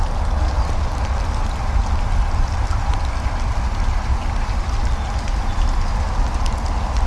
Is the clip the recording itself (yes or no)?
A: yes